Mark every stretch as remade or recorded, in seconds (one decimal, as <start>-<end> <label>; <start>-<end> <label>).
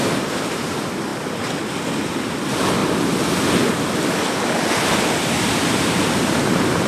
0.0-1.1 remade; 1.1-1.7 recorded; 1.7-2.8 remade; 2.8-5.6 recorded; 5.6-6.9 remade